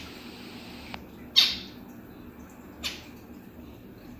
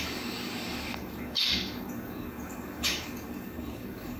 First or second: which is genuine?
first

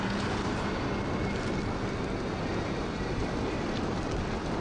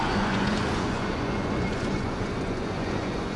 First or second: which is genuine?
first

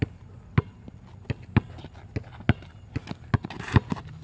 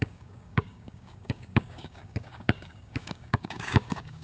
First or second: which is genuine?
first